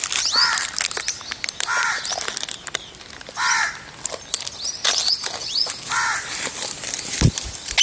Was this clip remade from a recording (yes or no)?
no